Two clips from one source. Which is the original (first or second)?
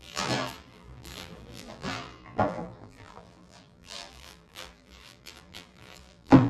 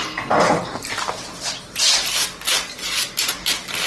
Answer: second